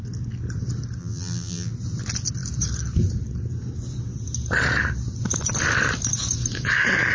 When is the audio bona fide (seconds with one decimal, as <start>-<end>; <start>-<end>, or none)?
0.0-1.0; 1.7-7.1